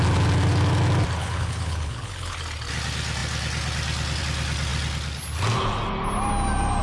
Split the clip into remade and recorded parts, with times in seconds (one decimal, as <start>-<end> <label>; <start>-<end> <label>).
0.0-1.2 recorded; 1.2-2.4 remade; 2.4-6.8 recorded